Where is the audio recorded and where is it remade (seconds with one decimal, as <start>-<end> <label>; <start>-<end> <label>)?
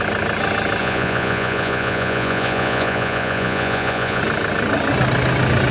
0.0-0.8 recorded; 0.8-4.2 remade; 4.2-5.7 recorded